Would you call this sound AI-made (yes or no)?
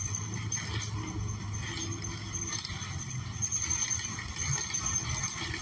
no